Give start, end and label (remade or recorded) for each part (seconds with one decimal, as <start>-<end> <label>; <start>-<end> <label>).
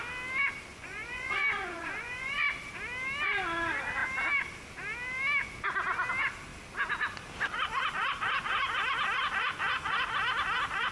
0.0-0.7 recorded; 0.7-2.4 remade; 2.4-10.9 recorded